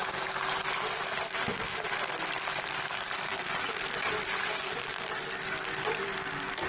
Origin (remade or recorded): recorded